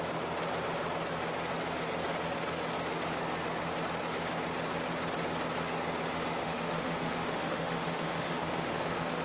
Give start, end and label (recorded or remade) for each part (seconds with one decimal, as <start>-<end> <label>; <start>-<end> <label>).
0.0-6.4 recorded; 6.4-9.2 remade